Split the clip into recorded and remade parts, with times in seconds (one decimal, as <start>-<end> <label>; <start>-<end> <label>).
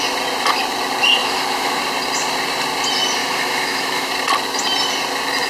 0.0-1.2 recorded; 1.2-1.8 remade; 1.8-3.2 recorded; 3.2-4.1 remade; 4.1-5.5 recorded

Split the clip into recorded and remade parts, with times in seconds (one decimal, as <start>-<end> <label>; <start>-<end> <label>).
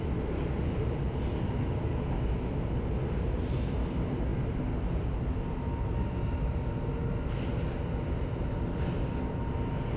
0.0-10.0 recorded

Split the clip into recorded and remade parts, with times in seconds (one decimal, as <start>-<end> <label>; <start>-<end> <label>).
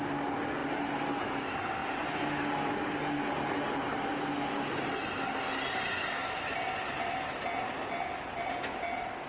0.0-9.3 recorded